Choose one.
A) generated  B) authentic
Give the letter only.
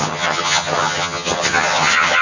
A